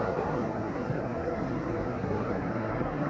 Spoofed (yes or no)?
yes